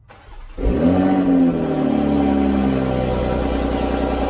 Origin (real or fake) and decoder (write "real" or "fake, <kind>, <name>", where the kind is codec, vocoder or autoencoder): real